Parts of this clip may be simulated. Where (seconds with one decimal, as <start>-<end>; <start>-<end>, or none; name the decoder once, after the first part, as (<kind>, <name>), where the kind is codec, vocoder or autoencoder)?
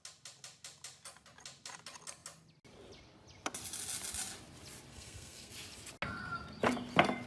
4.9-5.5 (codec, SNAC)